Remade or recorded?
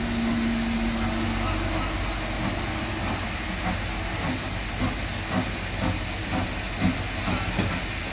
recorded